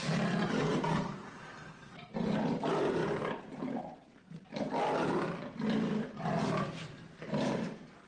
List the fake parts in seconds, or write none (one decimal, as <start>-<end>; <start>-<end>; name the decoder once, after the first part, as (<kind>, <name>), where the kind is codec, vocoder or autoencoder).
0.7-2.6 (vocoder, BigVGAN v2)